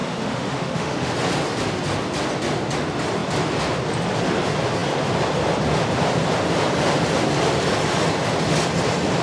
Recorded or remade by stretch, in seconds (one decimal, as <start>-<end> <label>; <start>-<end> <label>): 0.0-1.1 remade; 1.1-9.2 recorded